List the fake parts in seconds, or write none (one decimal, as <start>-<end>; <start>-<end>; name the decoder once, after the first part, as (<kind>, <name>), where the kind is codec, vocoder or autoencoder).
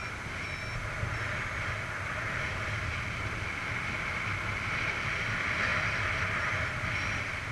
4.5-5.7 (vocoder, BigVGAN v2); 6.4-7.5